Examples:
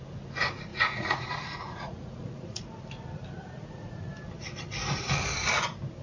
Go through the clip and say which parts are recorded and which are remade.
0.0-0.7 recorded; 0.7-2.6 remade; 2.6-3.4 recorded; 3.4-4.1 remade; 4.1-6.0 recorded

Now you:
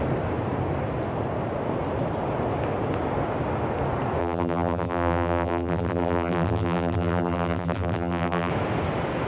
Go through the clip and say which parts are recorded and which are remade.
0.0-4.2 recorded; 4.2-8.5 remade; 8.5-9.3 recorded

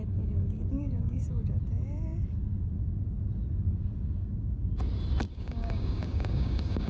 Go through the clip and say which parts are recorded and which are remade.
0.0-1.2 remade; 1.2-5.3 recorded; 5.3-6.9 remade

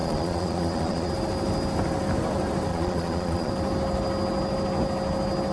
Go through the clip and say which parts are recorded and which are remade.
0.0-1.1 remade; 1.1-2.7 recorded; 2.7-3.5 remade; 3.5-5.5 recorded

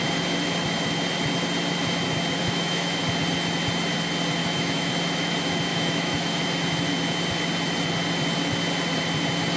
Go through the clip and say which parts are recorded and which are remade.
0.0-2.4 recorded; 2.4-3.0 remade; 3.0-4.4 recorded; 4.4-4.9 remade; 4.9-5.7 recorded; 5.7-6.4 remade; 6.4-9.6 recorded